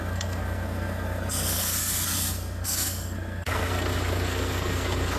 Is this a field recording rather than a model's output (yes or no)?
no